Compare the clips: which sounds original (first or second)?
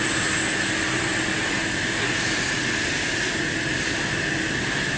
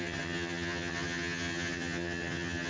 first